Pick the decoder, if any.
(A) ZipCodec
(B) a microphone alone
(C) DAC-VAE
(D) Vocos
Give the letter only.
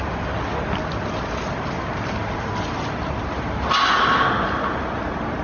B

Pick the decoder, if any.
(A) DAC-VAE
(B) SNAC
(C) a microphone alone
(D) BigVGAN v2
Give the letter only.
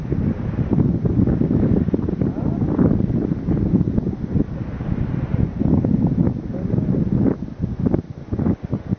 C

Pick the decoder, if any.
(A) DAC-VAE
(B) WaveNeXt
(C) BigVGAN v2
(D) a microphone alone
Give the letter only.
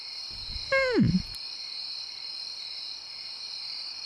D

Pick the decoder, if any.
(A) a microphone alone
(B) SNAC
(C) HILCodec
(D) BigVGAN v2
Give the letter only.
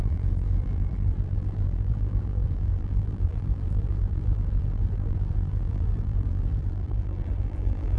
D